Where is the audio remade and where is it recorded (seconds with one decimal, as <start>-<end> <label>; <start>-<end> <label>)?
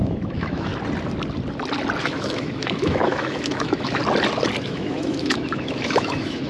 0.0-0.7 remade; 0.7-2.0 recorded; 2.0-4.0 remade; 4.0-4.6 recorded; 4.6-6.5 remade